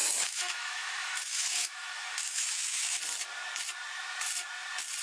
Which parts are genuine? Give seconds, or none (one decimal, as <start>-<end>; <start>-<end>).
3.0-5.0